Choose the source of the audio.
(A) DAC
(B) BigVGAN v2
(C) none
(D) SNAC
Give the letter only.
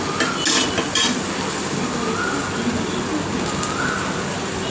C